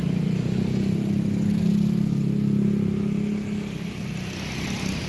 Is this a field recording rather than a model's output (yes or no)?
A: yes